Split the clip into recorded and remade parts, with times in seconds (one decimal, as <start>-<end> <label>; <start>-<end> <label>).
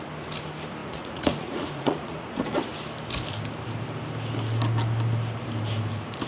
0.0-0.8 recorded; 0.8-2.5 remade; 2.5-6.3 recorded